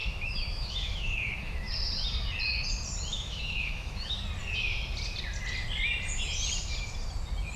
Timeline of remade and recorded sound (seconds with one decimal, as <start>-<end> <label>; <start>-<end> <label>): 0.0-1.7 remade; 1.7-3.1 recorded; 3.1-4.2 remade; 4.2-7.6 recorded

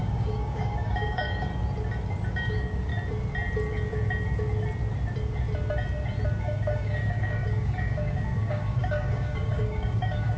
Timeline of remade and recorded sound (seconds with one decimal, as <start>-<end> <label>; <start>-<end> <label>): 0.0-1.5 remade; 1.5-2.3 recorded; 2.3-2.9 remade; 2.9-6.4 recorded; 6.4-10.4 remade